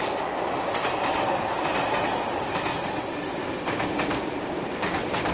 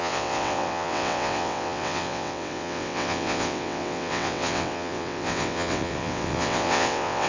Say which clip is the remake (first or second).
second